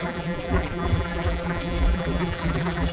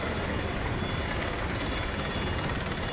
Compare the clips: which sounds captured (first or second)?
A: second